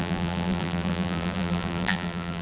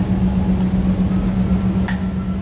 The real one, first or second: second